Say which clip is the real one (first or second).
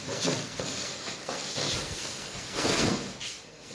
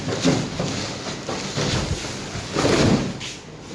second